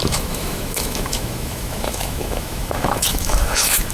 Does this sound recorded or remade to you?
remade